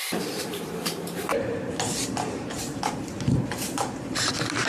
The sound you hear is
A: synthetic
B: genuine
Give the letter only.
A